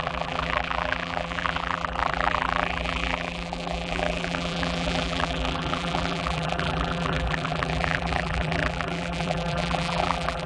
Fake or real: fake